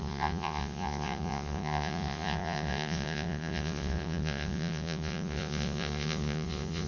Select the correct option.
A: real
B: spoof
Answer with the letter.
B